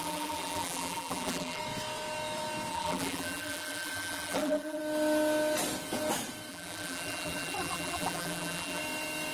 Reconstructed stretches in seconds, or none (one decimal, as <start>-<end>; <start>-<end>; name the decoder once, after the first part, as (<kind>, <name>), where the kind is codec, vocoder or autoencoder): 0.0-1.6 (vocoder, BigVGAN v2); 2.7-4.8; 6.5-8.8